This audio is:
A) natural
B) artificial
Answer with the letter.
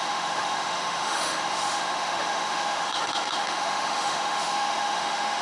B